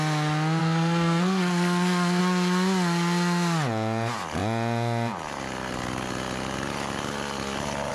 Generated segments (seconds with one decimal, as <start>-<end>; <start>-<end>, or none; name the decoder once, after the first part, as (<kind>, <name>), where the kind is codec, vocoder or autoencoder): 0.6-2.2 (codec, SNAC)